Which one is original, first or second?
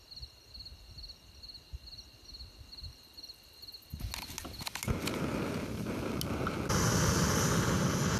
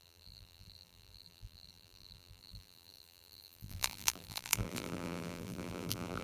first